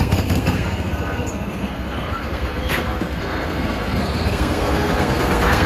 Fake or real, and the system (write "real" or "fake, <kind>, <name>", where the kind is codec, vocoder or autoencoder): fake, codec, SNAC